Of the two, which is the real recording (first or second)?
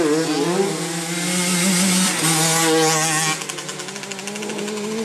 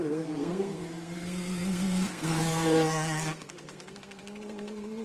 first